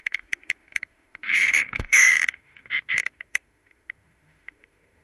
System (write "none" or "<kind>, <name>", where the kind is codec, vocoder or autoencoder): autoencoder, DAC-VAE